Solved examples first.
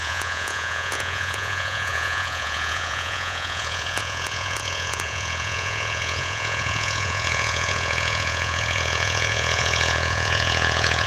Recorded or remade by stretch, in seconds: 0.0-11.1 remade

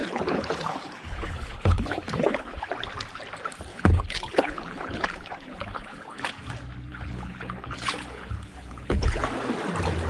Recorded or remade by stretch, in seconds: 0.0-2.7 remade; 2.7-3.7 recorded; 3.7-6.4 remade; 6.4-6.9 recorded; 6.9-9.2 remade; 9.2-10.1 recorded